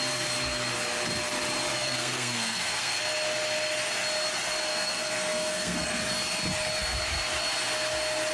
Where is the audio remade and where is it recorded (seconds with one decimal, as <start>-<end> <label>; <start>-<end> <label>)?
0.0-1.7 recorded; 1.7-3.0 remade; 3.0-4.7 recorded; 4.7-6.0 remade; 6.0-8.3 recorded